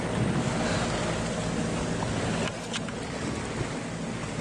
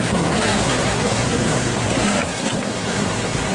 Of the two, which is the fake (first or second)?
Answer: second